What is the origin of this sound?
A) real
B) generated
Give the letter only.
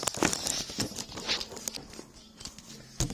A